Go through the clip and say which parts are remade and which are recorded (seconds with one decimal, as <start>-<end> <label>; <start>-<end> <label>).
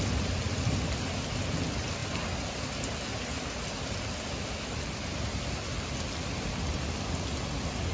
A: 0.0-7.9 recorded